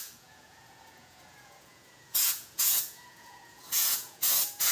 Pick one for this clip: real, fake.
fake